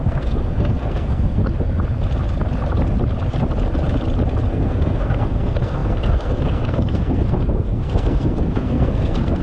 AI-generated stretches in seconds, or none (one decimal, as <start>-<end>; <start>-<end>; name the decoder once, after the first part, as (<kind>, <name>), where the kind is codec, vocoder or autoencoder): 0.0-1.4 (codec, SNAC); 4.5-9.4